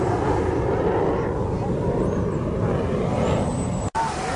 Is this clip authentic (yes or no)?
yes